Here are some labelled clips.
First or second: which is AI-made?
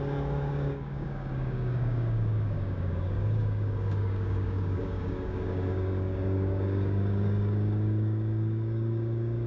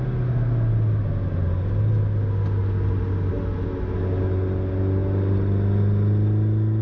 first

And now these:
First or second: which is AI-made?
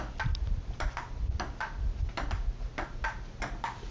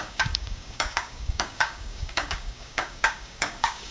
second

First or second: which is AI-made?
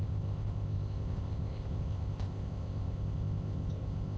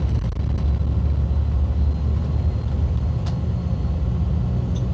first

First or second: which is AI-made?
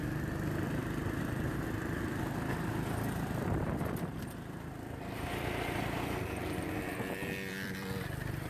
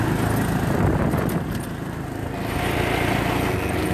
first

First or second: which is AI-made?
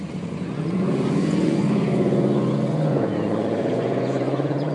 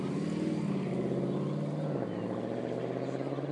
first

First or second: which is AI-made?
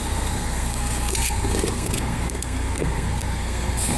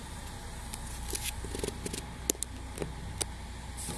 first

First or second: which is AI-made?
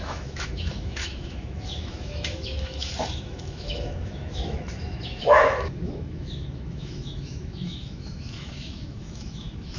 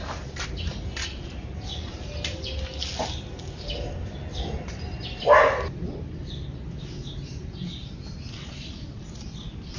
first